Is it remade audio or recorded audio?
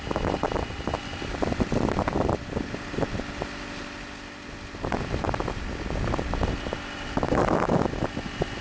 recorded